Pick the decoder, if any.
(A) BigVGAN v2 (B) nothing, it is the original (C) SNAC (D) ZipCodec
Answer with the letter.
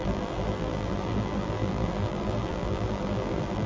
A